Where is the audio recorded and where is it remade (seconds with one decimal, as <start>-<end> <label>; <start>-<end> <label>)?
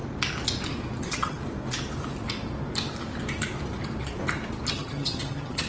0.0-1.0 recorded; 1.0-1.4 remade; 1.4-4.7 recorded; 4.7-5.7 remade